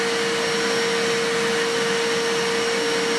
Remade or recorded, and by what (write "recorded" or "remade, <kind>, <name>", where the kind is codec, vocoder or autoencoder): recorded